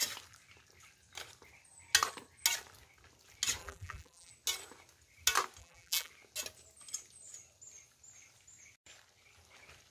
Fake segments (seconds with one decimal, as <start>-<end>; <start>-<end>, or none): 3.6-4.3; 5.6-6.1